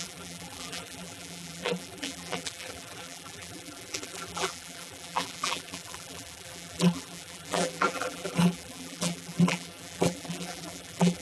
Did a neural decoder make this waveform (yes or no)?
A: yes